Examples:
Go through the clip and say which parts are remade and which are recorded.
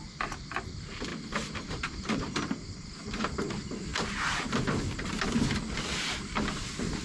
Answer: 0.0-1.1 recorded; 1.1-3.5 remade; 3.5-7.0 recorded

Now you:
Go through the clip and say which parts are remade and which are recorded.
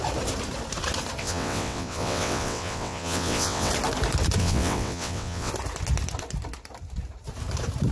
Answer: 0.0-1.2 recorded; 1.2-3.7 remade; 3.7-4.4 recorded; 4.4-5.5 remade; 5.5-7.9 recorded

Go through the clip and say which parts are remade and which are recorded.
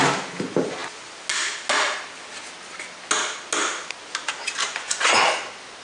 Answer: 0.0-4.7 recorded; 4.7-5.2 remade; 5.2-5.8 recorded